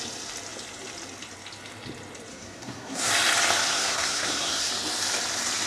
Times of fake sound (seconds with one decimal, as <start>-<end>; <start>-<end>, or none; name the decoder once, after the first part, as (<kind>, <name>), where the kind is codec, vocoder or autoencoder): 2.3-3.1 (codec, SNAC); 3.7-4.7